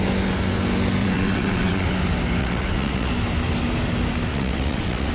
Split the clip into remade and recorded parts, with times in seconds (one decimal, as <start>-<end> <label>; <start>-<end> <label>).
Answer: 0.0-1.0 recorded; 1.0-1.9 remade; 1.9-2.4 recorded; 2.4-3.1 remade; 3.1-4.3 recorded; 4.3-5.1 remade